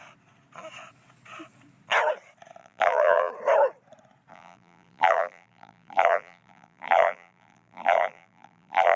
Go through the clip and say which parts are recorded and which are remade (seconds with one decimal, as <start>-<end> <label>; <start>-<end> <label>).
0.0-2.6 recorded; 2.6-3.3 remade; 3.3-4.3 recorded; 4.3-9.0 remade